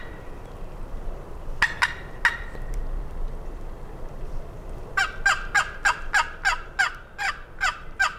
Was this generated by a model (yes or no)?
no